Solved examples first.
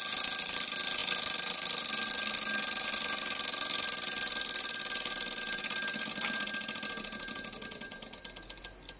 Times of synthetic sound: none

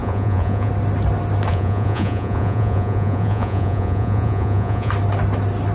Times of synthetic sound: 0.0-0.7 (vocoder, Vocos); 1.5-4.9

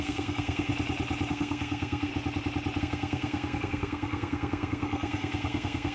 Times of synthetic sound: 0.0-0.7 (codec, SNAC); 1.3-2.1; 2.8-5.9